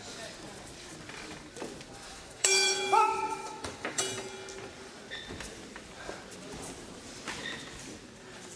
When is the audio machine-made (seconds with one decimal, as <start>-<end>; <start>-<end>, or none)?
2.1-4.0